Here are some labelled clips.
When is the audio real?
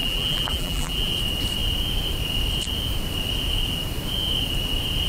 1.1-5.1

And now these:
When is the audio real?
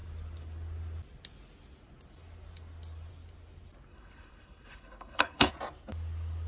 0.0-3.9; 5.5-6.5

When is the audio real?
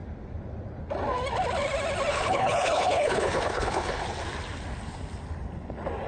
0.0-2.1; 4.0-6.1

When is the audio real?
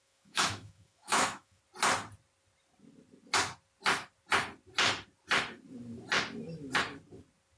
1.6-7.6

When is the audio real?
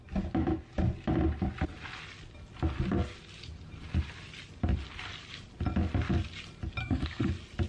0.0-6.8; 7.3-7.7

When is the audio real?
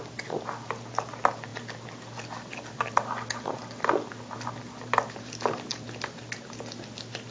0.0-7.3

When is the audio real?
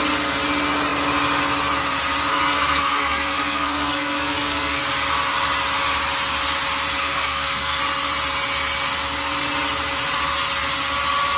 0.0-2.3; 4.8-7.0; 7.8-11.4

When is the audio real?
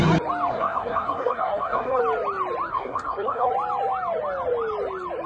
0.0-0.5; 2.0-2.7; 3.5-5.3